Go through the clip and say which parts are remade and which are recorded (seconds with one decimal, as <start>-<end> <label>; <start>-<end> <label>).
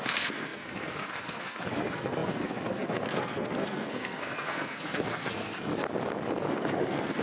0.0-5.7 remade; 5.7-6.5 recorded; 6.5-7.2 remade